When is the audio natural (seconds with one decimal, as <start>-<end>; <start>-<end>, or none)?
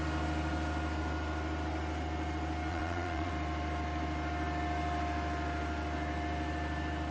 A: 0.0-2.7; 3.3-7.1